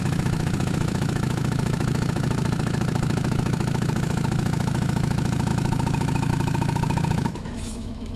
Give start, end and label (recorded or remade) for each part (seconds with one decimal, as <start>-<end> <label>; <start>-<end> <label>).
0.0-8.2 remade